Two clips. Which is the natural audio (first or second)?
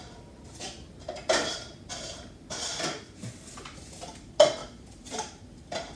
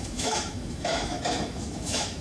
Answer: first